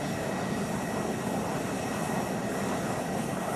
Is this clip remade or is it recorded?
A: recorded